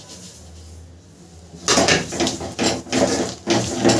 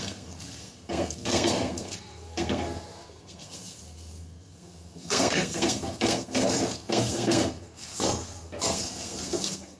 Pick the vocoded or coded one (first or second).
second